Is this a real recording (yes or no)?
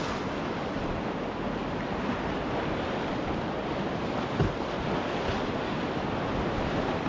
yes